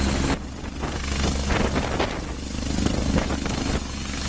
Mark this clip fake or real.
real